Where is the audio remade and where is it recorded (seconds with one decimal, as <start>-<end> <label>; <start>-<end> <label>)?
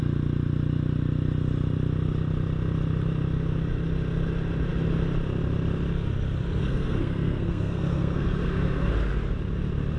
0.0-6.6 recorded; 6.6-8.9 remade; 8.9-10.0 recorded